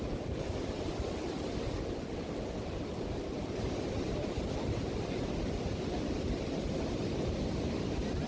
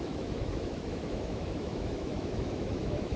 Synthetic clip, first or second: second